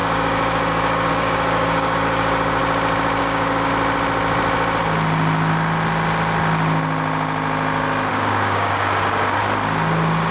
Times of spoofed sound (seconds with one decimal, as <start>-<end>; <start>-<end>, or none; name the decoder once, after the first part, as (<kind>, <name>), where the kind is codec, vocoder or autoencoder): 0.0-2.6 (codec, DAC); 3.2-3.7; 8.1-9.4